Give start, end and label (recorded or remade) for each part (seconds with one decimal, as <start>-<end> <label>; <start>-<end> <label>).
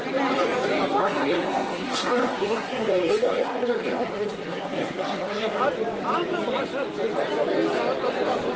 0.0-1.0 recorded; 1.0-5.6 remade; 5.6-8.6 recorded